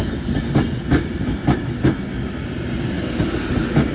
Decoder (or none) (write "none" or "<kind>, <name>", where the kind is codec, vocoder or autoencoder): none